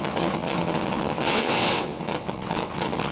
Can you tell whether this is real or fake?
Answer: fake